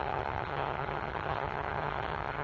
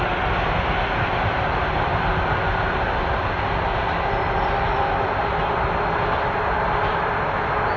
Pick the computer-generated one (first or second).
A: first